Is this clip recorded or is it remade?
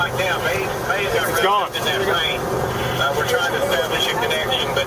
recorded